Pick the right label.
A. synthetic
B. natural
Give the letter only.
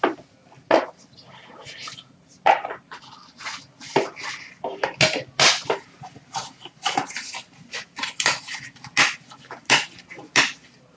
B